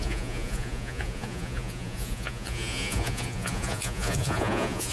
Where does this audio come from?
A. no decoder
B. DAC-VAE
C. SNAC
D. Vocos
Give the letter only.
D